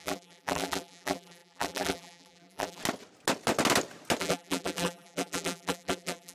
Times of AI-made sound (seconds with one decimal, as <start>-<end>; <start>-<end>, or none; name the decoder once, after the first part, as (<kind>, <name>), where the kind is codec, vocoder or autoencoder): 0.0-2.8 (vocoder, BigVGAN v2); 4.2-6.3